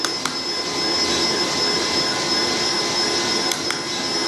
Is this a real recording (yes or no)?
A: yes